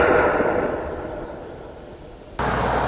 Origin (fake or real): real